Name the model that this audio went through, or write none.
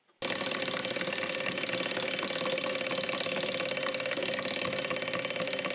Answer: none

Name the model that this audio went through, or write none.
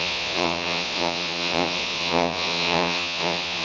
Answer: vocoder, Vocos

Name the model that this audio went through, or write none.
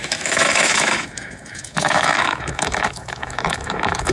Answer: autoencoder, DAC-VAE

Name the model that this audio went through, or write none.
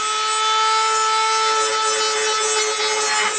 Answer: none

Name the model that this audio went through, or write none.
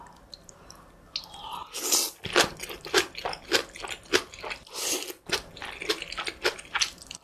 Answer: none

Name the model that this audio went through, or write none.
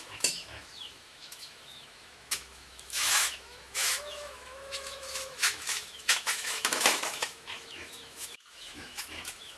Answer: autoencoder, DAC-VAE